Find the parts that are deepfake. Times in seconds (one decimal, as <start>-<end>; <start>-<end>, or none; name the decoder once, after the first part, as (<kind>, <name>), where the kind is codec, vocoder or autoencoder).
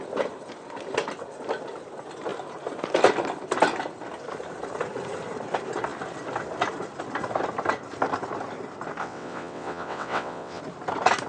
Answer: 9.0-10.6 (vocoder, WaveNeXt)